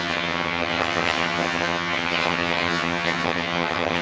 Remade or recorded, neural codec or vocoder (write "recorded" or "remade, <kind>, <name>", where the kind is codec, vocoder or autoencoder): remade, vocoder, HiFi-GAN